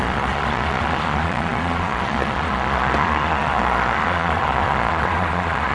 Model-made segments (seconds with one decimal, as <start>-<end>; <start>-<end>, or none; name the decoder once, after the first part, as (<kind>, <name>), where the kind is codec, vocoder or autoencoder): 0.0-5.7 (vocoder, Vocos)